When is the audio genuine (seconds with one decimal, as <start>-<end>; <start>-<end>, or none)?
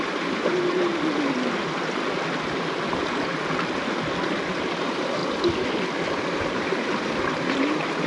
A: 0.9-4.6; 5.2-6.2